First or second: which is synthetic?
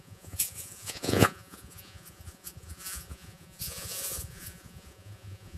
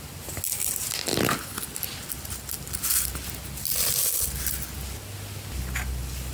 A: first